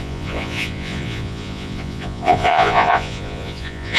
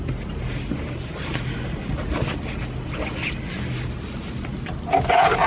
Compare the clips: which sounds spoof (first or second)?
first